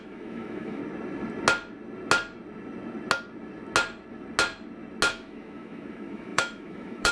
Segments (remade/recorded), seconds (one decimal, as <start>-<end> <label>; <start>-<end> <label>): 0.0-0.8 remade; 0.8-5.1 recorded; 5.1-7.1 remade